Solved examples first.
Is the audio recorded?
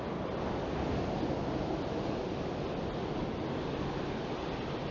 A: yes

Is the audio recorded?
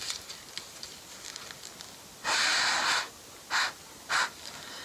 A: yes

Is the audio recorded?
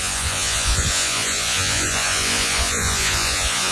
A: no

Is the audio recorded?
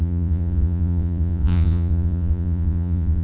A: no